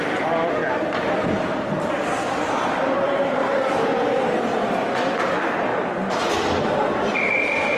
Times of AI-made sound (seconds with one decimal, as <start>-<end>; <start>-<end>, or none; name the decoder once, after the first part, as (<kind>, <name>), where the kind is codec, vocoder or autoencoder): 0.0-0.6 (vocoder, BigVGAN v2); 1.9-5.7; 6.7-7.8